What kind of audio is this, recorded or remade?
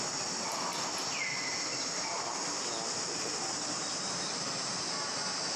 recorded